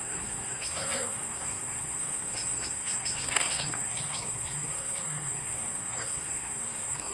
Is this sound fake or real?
fake